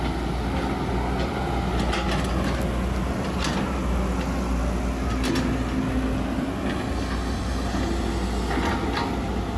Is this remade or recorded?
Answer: recorded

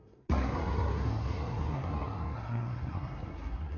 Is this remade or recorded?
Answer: remade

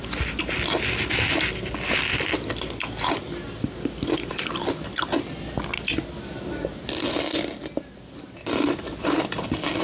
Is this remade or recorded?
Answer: recorded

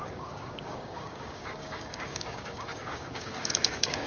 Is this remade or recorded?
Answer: remade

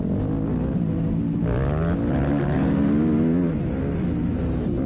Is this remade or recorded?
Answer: recorded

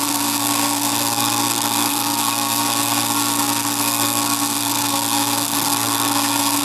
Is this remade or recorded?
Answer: remade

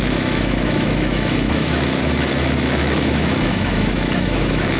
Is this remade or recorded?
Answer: remade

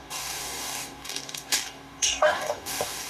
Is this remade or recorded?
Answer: remade